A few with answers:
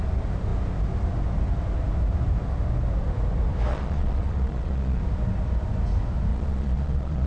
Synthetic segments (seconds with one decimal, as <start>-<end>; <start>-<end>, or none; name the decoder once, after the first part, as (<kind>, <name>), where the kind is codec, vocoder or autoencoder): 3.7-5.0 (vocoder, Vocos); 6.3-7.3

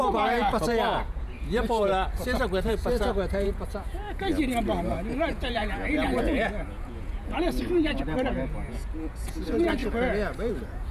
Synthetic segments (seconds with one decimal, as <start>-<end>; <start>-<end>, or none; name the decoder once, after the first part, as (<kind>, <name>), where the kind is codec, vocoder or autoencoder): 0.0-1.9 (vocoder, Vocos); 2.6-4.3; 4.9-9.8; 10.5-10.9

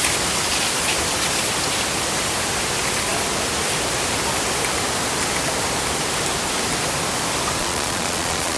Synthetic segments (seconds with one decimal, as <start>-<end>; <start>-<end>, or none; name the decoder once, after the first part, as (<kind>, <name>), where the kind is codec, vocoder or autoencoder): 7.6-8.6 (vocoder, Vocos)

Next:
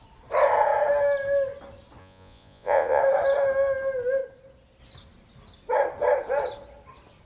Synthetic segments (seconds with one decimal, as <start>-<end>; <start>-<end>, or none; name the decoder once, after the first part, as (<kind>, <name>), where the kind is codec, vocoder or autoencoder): 2.0-3.0 (vocoder, Vocos)

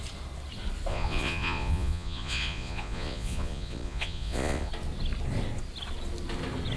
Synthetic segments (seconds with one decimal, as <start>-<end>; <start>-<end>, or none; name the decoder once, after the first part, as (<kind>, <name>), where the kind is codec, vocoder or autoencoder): 0.9-4.7 (vocoder, Vocos)

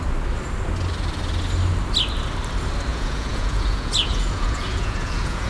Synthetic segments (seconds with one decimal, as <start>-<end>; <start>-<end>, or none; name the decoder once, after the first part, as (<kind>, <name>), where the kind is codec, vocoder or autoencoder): 2.9-5.5 (vocoder, Vocos)